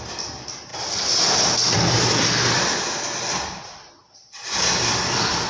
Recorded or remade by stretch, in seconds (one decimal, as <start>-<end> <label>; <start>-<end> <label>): 0.0-5.5 recorded